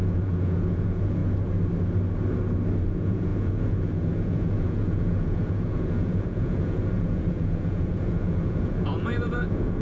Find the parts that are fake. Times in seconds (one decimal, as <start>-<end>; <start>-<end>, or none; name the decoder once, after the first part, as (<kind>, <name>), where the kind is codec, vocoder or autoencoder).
0.0-1.2 (vocoder, Vocos); 2.8-9.8